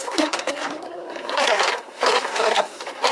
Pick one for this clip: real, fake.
fake